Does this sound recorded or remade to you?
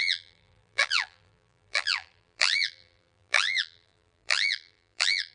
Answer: remade